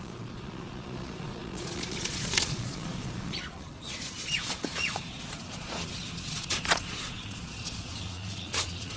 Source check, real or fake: fake